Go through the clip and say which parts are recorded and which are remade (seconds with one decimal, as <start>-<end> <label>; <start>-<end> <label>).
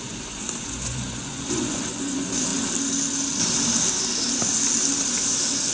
0.0-2.5 remade; 2.5-5.7 recorded